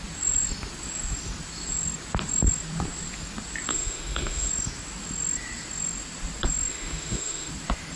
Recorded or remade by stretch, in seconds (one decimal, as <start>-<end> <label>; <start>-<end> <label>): 0.0-3.7 recorded; 3.7-4.5 remade; 4.5-6.7 recorded; 6.7-7.5 remade; 7.5-8.0 recorded